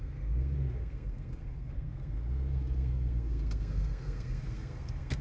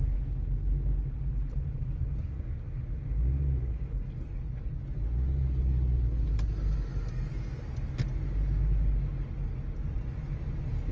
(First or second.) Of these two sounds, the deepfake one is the first